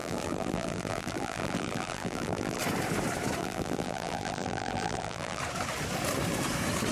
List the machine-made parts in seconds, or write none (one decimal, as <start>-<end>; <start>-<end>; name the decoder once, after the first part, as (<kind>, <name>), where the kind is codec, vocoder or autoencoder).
0.0-2.6 (vocoder, BigVGAN v2); 3.4-5.4